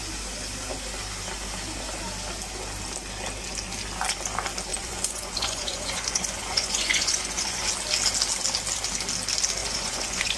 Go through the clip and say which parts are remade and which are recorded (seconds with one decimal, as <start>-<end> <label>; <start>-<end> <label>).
0.0-4.7 recorded; 4.7-7.7 remade; 7.7-9.6 recorded; 9.6-10.4 remade